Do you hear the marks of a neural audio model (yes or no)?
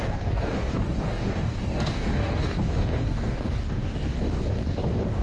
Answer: yes